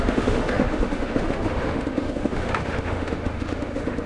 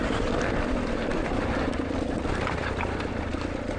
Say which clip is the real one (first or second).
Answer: second